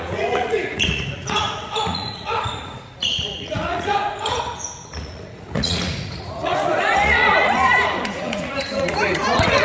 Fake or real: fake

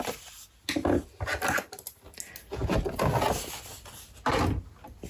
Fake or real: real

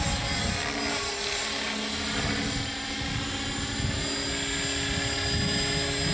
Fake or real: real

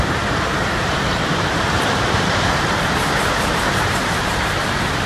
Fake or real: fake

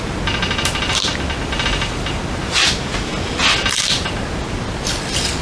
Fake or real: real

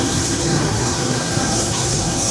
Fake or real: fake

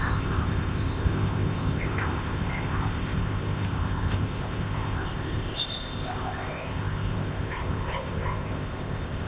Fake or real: fake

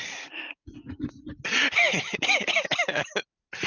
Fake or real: real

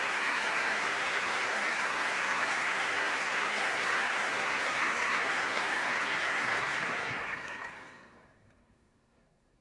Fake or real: fake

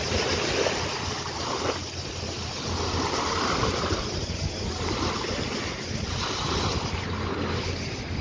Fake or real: real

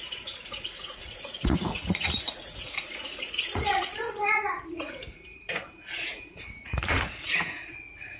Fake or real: fake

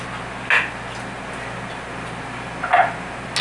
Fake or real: real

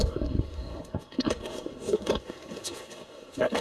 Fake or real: fake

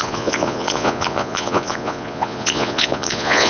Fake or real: fake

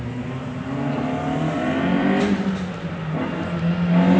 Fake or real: real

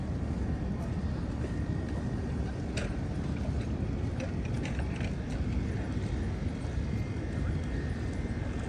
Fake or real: real